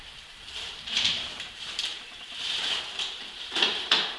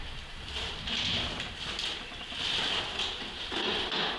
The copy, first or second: first